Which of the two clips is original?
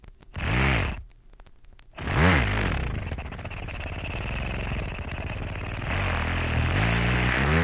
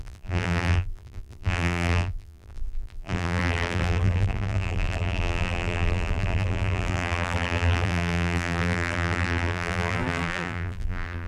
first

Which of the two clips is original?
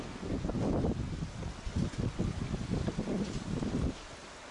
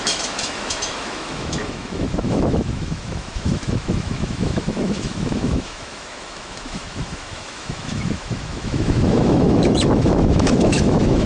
first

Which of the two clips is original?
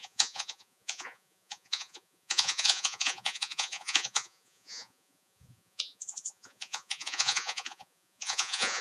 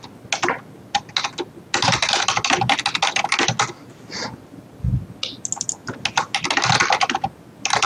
second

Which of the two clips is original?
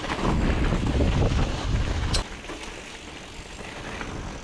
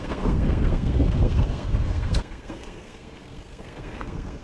first